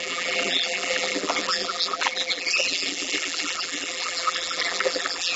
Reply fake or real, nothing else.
fake